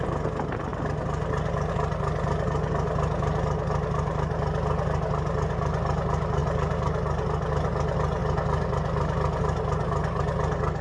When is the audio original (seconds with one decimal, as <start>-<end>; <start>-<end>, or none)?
0.0-10.8

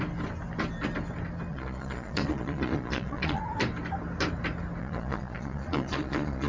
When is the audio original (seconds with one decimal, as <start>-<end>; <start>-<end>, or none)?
0.0-1.5; 3.4-4.8